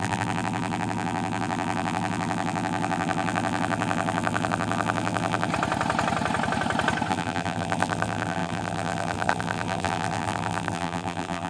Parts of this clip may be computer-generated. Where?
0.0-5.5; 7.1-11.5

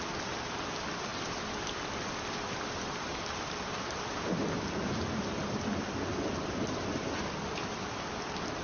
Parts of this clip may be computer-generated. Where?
none

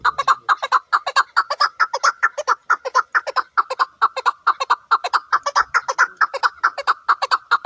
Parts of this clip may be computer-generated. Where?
none

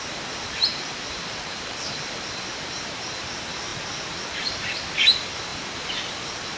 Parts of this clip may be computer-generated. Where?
0.7-3.2

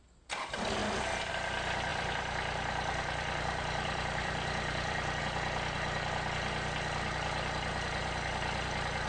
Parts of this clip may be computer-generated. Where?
0.8-1.3; 1.9-5.2

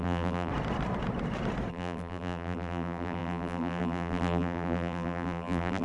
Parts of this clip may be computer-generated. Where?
0.0-0.5; 1.7-5.8